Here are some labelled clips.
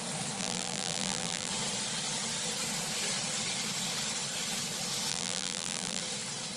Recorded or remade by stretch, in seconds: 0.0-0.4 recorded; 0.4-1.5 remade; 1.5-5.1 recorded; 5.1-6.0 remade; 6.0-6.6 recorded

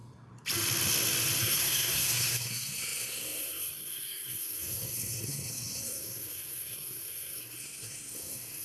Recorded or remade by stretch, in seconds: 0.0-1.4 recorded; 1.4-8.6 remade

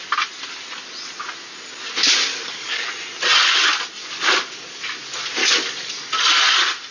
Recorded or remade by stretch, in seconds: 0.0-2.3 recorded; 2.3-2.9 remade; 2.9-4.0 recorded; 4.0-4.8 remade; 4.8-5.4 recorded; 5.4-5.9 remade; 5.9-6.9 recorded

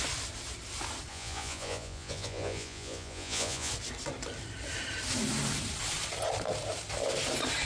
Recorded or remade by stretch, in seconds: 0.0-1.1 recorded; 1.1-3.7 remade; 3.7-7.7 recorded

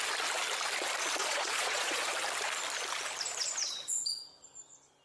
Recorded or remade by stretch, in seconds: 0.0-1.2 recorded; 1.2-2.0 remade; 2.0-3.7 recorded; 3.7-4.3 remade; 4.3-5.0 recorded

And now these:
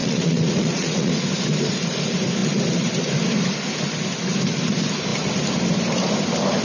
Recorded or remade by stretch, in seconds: 0.0-1.1 remade; 1.1-6.6 recorded

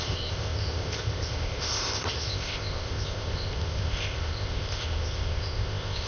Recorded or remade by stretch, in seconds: 0.0-6.1 remade